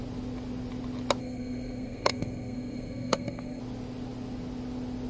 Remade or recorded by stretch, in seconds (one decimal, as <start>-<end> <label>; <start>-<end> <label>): 0.0-1.2 recorded; 1.2-3.6 remade; 3.6-5.1 recorded